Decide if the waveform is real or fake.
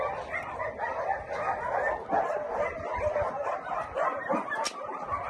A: real